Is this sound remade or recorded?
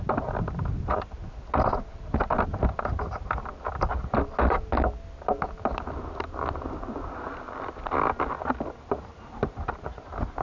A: recorded